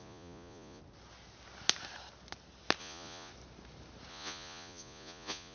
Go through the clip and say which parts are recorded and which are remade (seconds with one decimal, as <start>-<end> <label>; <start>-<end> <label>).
0.0-0.8 remade; 0.8-2.8 recorded; 2.8-3.3 remade; 3.3-4.1 recorded; 4.1-5.5 remade